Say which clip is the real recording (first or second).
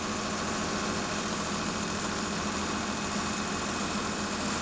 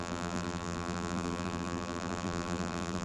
first